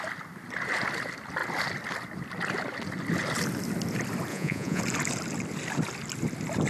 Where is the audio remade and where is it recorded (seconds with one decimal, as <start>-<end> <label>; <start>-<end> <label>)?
0.0-4.3 recorded; 4.3-4.8 remade; 4.8-6.7 recorded